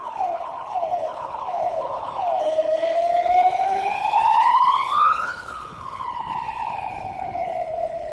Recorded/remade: remade